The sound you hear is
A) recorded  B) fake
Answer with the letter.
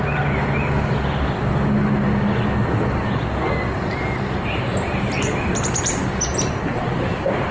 A